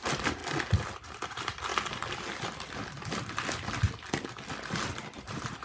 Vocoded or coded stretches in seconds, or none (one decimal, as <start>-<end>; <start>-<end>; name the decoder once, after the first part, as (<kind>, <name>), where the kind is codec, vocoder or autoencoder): 0.0-0.4 (vocoder, BigVGAN v2); 1.2-1.7; 5.1-5.6